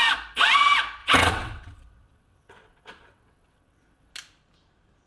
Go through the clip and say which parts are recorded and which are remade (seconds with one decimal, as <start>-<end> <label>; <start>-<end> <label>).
0.0-1.0 recorded; 1.0-4.1 remade; 4.1-5.1 recorded